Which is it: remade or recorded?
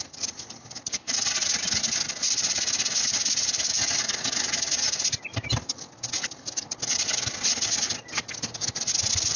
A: recorded